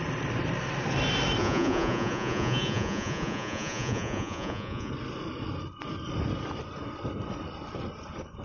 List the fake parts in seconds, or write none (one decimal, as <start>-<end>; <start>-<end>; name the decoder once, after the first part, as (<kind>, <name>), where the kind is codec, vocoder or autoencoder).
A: 1.4-4.9 (vocoder, Vocos)